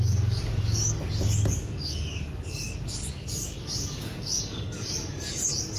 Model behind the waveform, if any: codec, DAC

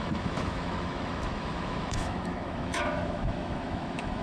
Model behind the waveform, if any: autoencoder, DAC-VAE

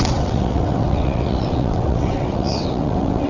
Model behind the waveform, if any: vocoder, WaveNeXt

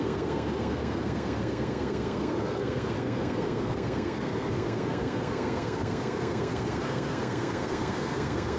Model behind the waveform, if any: codec, SNAC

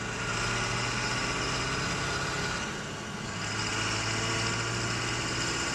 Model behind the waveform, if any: none